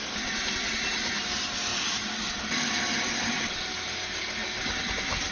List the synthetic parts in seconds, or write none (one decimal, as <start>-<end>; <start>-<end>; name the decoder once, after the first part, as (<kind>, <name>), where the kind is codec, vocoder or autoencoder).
0.0-0.7 (vocoder, BigVGAN v2); 1.7-3.6